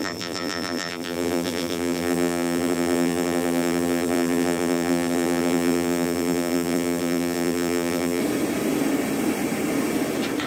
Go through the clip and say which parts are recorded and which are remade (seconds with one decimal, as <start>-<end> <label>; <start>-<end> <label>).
0.0-8.2 remade; 8.2-10.5 recorded